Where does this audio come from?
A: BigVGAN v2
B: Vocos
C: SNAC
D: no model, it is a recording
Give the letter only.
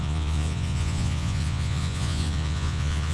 B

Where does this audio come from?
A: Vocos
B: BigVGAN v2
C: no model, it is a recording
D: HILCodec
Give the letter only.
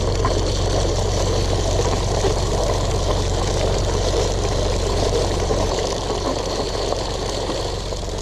B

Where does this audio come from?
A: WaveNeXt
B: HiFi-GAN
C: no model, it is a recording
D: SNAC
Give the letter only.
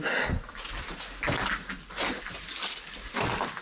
C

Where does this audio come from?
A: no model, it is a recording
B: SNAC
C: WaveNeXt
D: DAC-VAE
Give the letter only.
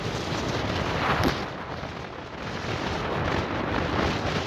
A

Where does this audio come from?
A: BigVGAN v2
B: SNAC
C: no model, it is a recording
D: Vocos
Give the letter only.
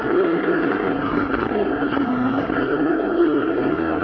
B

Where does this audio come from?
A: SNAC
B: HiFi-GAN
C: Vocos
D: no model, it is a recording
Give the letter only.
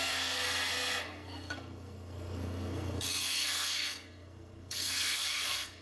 A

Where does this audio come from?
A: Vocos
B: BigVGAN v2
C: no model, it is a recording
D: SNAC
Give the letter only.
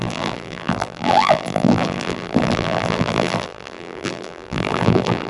B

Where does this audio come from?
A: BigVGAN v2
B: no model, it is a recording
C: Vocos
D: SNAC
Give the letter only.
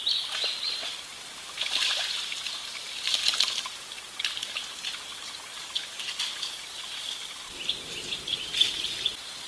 B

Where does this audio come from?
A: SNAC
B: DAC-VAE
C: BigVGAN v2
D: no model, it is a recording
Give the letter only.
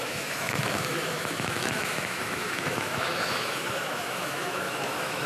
B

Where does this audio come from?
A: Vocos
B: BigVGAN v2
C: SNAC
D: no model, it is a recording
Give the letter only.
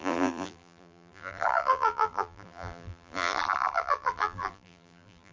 B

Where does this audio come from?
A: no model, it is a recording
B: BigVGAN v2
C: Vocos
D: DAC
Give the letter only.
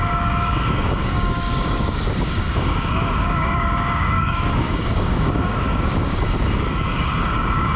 D